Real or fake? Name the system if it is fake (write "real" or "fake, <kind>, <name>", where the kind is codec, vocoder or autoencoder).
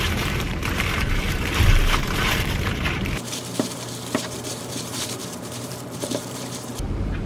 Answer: fake, vocoder, BigVGAN v2